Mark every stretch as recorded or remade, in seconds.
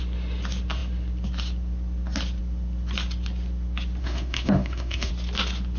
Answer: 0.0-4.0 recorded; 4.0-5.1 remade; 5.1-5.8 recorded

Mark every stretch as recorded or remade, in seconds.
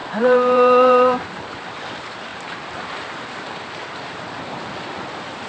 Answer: 0.0-1.9 remade; 1.9-2.3 recorded; 2.3-4.3 remade; 4.3-5.5 recorded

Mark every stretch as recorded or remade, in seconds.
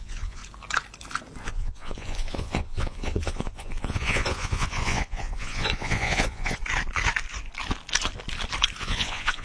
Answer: 0.0-0.4 remade; 0.4-1.4 recorded; 1.4-6.6 remade; 6.6-8.8 recorded; 8.8-9.4 remade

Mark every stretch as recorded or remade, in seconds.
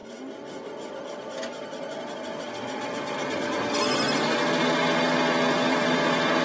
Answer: 0.0-5.5 recorded; 5.5-6.0 remade; 6.0-6.4 recorded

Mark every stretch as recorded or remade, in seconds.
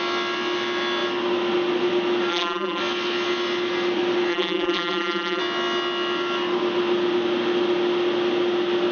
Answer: 0.0-2.3 recorded; 2.3-2.8 remade; 2.8-4.3 recorded; 4.3-5.4 remade; 5.4-8.9 recorded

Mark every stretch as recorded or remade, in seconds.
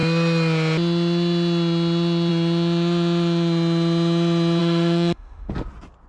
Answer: 0.0-4.6 recorded; 4.6-5.5 remade; 5.5-6.1 recorded